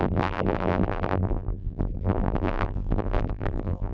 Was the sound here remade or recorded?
remade